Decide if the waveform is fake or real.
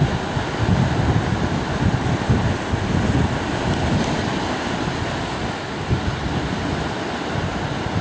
real